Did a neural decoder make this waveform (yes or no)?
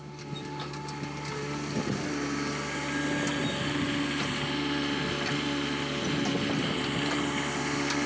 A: no